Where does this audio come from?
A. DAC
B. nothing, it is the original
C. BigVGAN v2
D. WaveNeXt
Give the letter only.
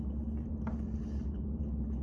C